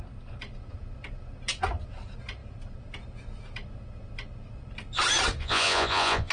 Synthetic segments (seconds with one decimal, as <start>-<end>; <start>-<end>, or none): 5.4-6.3